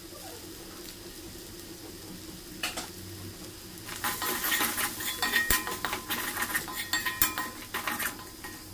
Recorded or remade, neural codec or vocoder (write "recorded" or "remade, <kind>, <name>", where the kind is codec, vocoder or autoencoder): recorded